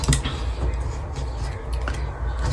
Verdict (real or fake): real